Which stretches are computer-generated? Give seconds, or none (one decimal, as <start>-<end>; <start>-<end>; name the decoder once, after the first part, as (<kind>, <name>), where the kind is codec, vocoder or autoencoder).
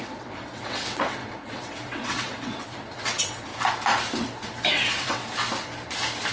0.0-3.5 (vocoder, WaveNeXt); 4.7-5.2